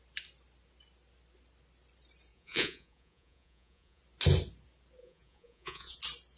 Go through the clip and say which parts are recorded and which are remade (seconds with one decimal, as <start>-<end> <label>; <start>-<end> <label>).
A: 0.0-2.3 recorded; 2.3-4.0 remade; 4.0-5.0 recorded; 5.0-6.0 remade; 6.0-6.4 recorded